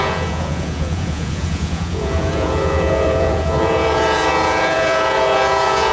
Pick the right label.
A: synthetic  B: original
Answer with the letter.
A